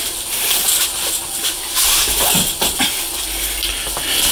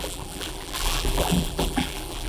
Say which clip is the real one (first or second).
first